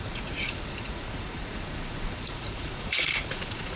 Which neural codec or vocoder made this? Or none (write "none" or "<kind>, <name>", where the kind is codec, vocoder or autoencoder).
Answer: vocoder, Vocos